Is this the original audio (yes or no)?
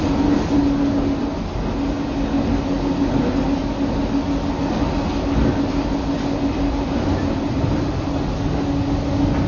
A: yes